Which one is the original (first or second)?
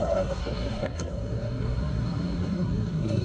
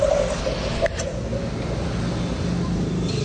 second